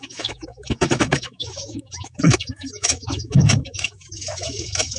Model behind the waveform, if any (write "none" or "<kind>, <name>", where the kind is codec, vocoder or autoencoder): autoencoder, DAC-VAE